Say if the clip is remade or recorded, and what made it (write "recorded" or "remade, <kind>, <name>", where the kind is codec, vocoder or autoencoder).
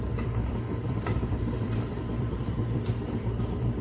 remade, vocoder, BigVGAN v2